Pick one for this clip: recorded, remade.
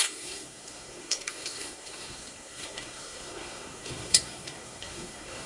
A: remade